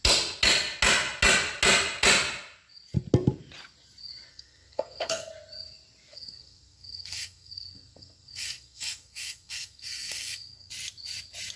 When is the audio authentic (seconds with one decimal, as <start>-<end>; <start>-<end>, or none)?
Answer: 0.0-4.3; 5.3-6.1; 10.7-11.6

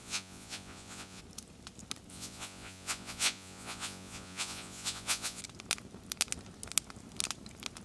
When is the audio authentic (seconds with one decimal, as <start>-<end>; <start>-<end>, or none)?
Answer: 1.2-2.1; 5.4-7.8

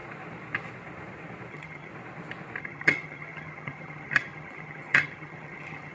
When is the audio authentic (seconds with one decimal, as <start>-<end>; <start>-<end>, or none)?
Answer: 0.0-1.5; 1.9-2.6